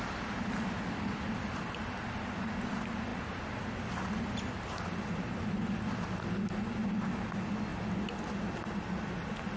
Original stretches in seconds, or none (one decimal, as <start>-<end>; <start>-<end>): 0.0-9.6